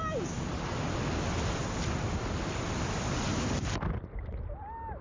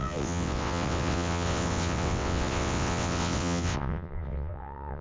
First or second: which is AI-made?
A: second